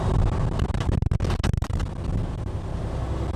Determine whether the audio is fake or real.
real